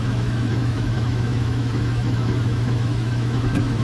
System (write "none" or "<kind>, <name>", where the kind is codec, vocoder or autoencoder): autoencoder, DAC-VAE